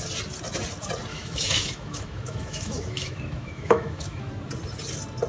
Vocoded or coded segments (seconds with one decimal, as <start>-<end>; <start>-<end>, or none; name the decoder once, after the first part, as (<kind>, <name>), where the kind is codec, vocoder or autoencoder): 1.1-4.3 (autoencoder, DAC-VAE)